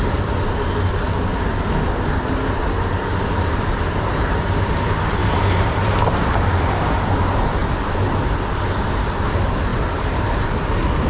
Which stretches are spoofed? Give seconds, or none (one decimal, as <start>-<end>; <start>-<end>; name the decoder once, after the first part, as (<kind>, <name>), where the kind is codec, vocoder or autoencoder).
3.0-4.1 (vocoder, BigVGAN v2); 5.2-6.9; 9.7-10.5